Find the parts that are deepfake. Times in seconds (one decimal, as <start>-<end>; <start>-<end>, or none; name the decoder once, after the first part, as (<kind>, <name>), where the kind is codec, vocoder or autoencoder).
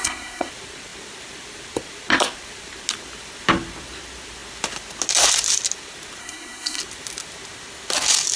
0.0-0.5 (codec, SNAC); 6.2-6.8